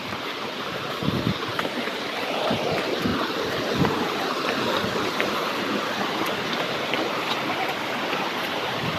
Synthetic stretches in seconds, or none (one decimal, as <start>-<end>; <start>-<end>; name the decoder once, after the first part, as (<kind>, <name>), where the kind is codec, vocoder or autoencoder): 1.5-2.6 (vocoder, BigVGAN v2); 3.1-6.7